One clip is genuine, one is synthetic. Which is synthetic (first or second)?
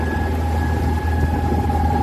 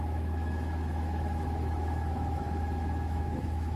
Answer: second